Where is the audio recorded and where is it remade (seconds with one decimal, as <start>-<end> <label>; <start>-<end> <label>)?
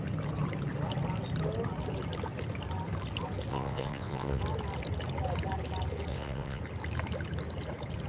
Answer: 0.0-3.5 recorded; 3.5-4.4 remade; 4.4-6.1 recorded; 6.1-6.6 remade; 6.6-8.1 recorded